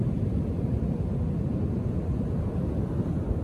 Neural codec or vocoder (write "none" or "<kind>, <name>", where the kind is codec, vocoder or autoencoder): none